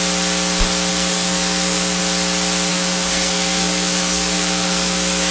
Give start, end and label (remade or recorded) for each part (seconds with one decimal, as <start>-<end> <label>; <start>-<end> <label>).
0.0-0.9 recorded; 0.9-2.0 remade; 2.0-2.7 recorded; 2.7-5.3 remade